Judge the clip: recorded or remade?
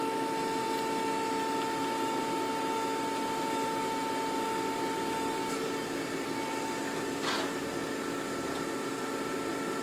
recorded